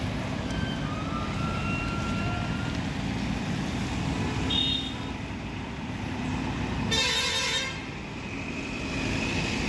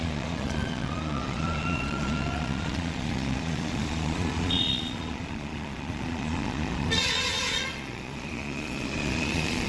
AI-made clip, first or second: second